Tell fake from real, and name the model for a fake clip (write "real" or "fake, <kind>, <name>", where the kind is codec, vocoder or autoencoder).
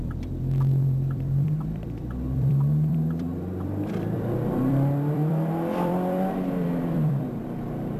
fake, vocoder, BigVGAN v2